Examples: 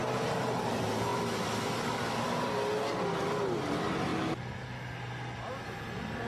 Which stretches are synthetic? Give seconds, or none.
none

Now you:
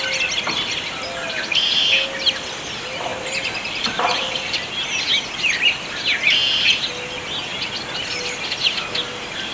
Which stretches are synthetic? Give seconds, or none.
3.1-4.7 (vocoder, BigVGAN v2)

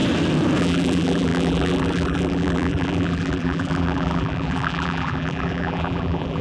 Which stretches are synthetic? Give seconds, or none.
0.6-6.4 (vocoder, BigVGAN v2)

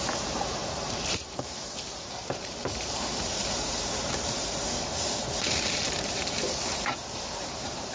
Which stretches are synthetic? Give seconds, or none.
0.0-7.9 (vocoder, BigVGAN v2)

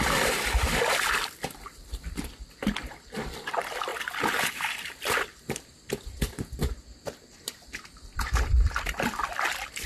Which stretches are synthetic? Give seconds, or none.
0.0-3.9 (vocoder, BigVGAN v2); 4.5-6.6; 7.2-9.9

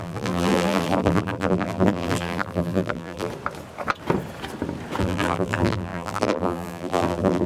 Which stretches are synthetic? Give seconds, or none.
0.0-3.3 (vocoder, BigVGAN v2); 5.0-7.5

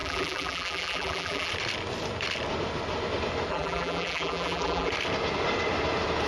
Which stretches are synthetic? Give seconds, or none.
0.0-1.5 (vocoder, BigVGAN v2); 3.5-4.9

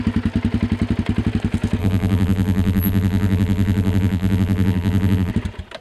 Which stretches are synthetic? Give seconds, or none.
1.8-5.3 (vocoder, BigVGAN v2)